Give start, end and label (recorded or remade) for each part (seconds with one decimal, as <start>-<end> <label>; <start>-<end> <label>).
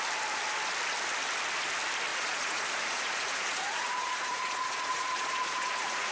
0.0-2.1 recorded; 2.1-6.1 remade